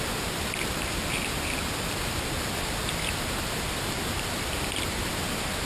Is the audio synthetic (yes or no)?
yes